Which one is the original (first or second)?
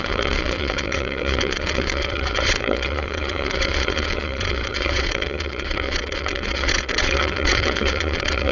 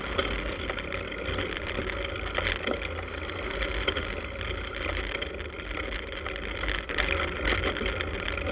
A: second